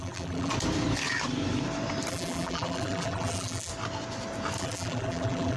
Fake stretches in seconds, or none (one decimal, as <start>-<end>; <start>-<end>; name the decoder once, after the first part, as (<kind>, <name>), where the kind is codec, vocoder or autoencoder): 0.0-0.5 (vocoder, BigVGAN v2); 2.1-3.7; 4.6-5.6